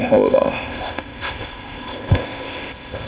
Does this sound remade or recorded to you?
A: remade